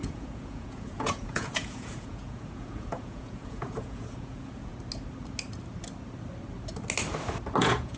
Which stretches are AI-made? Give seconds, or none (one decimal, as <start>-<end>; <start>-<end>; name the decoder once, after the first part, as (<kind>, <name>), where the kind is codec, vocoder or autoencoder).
0.0-4.7 (vocoder, Vocos); 7.6-8.0